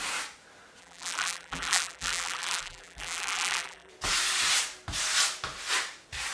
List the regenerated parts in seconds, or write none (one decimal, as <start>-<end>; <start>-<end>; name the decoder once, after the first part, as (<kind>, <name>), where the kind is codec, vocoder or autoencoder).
0.8-3.9 (vocoder, BigVGAN v2)